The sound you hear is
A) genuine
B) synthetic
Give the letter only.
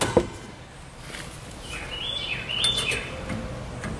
A